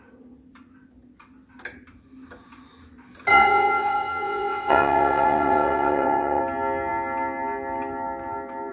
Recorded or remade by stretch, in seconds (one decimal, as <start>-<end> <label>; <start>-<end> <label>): 0.0-3.3 recorded; 3.3-6.4 remade; 6.4-8.7 recorded